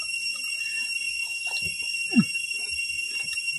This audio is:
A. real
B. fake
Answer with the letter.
A